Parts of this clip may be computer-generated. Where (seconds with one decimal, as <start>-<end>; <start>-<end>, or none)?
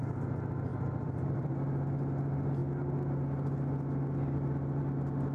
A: 0.7-1.5